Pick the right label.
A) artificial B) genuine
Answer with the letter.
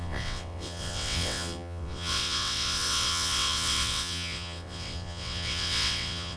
A